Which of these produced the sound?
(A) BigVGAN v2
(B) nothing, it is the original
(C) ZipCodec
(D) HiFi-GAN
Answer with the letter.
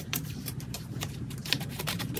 A